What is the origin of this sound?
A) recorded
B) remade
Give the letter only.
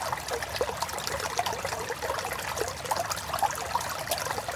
A